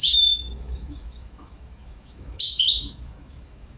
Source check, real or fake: fake